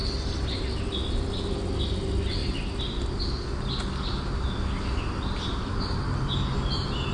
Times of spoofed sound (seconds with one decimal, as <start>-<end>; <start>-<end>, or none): none